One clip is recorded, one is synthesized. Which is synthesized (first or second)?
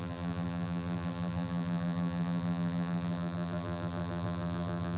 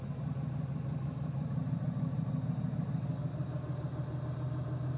first